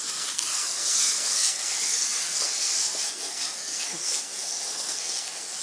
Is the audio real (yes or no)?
no